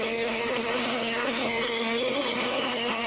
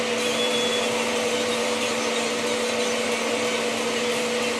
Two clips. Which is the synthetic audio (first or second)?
first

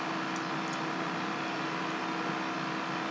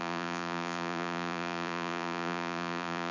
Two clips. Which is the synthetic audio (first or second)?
second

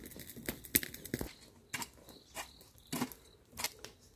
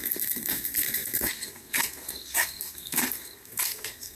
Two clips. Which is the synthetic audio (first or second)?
second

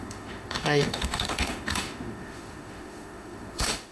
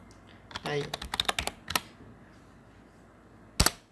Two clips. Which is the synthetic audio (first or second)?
first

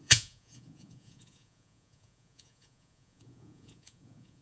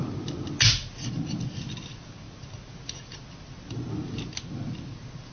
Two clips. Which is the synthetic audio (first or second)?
first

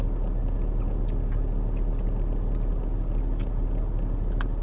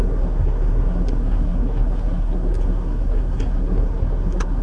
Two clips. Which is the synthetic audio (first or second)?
second